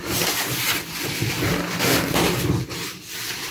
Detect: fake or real real